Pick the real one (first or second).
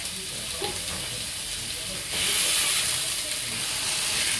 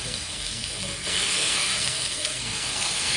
first